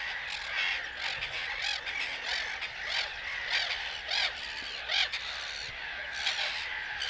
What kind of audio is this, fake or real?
real